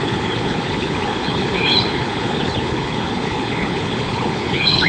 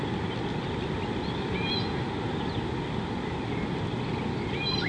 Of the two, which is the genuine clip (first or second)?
second